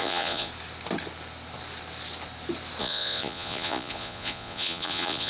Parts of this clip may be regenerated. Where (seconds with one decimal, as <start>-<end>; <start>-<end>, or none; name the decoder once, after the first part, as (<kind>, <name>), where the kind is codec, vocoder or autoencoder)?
0.0-0.5 (vocoder, Vocos); 2.8-5.3